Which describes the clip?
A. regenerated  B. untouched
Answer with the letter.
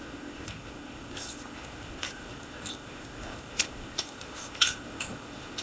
A